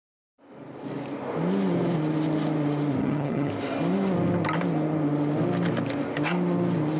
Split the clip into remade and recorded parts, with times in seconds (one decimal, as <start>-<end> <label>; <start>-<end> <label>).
0.0-3.0 recorded; 3.0-3.5 remade; 3.5-7.0 recorded